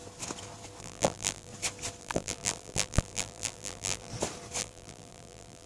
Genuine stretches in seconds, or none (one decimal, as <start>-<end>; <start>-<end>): 0.0-0.8; 1.5-2.0; 4.1-4.6